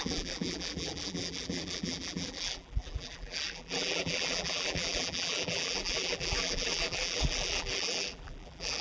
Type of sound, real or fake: fake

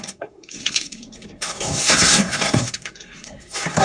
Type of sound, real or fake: fake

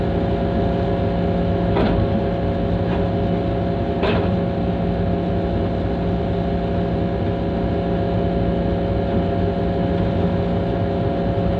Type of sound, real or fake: real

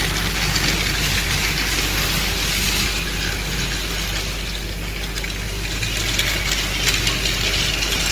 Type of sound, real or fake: real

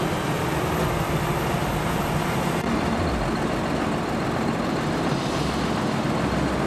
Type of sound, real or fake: real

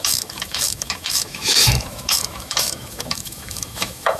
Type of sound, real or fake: fake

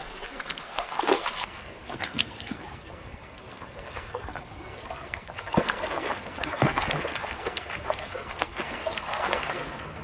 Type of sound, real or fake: fake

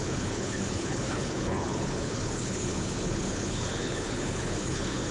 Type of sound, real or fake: fake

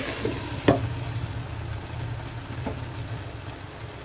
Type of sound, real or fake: real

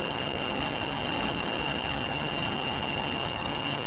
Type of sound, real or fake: fake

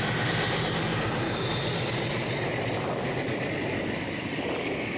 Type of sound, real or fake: real